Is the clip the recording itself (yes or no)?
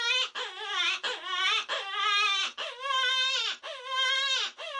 yes